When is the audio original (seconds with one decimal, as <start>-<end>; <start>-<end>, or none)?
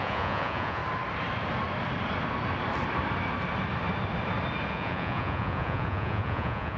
0.8-4.7